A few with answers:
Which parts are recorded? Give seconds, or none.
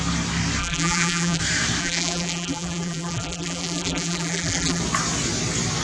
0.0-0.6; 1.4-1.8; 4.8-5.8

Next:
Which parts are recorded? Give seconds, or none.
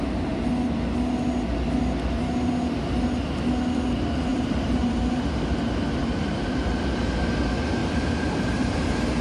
0.0-4.3; 5.2-6.0; 7.0-7.8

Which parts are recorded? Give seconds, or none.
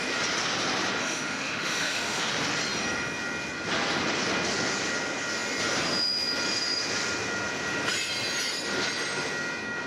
0.0-1.0; 2.3-9.9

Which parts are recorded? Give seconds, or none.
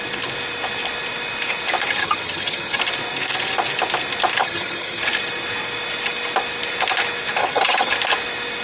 0.0-2.0; 2.8-4.4; 5.0-7.4; 7.9-8.6